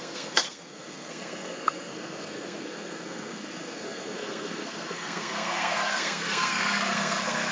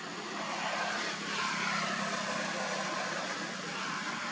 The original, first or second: second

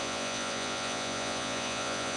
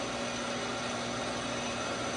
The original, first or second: second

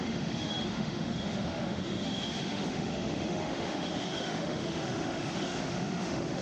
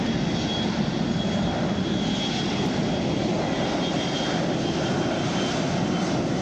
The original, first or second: second